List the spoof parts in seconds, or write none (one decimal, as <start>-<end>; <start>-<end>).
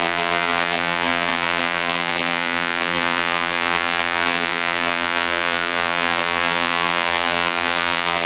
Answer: 0.0-8.3